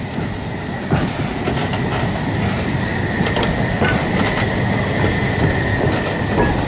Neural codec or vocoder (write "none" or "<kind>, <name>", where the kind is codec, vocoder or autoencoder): none